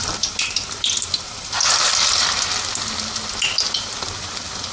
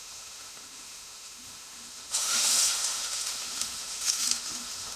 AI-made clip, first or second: second